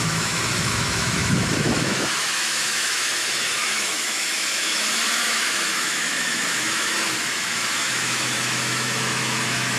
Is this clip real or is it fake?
fake